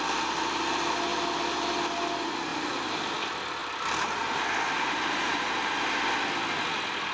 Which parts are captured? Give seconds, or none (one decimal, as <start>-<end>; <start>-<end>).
0.0-2.5; 3.2-3.6; 5.7-7.1

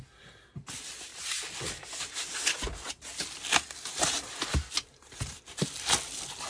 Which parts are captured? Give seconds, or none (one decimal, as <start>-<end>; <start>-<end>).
0.0-6.5

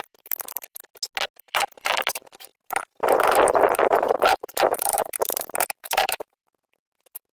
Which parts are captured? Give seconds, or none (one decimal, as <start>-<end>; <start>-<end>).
0.9-1.4

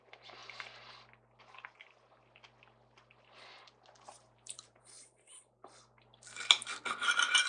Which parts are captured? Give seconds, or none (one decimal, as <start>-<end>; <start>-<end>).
0.0-4.1; 4.8-7.5

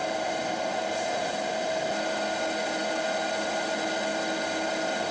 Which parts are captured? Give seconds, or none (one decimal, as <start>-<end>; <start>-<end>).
1.5-5.1

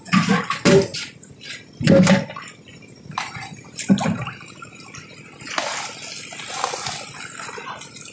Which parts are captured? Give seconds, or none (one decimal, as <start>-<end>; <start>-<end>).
0.0-0.9; 1.7-2.7; 3.9-8.1

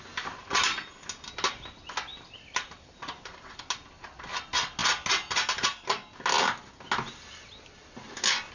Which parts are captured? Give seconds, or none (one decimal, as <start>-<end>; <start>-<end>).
0.0-2.1; 3.6-8.5